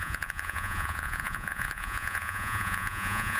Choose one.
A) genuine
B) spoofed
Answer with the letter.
B